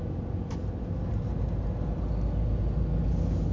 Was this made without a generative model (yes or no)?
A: yes